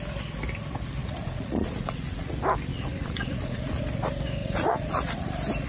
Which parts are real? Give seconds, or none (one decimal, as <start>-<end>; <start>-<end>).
0.0-1.0; 2.3-2.7; 3.8-4.4; 5.3-5.7